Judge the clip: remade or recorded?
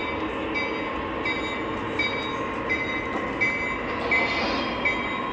recorded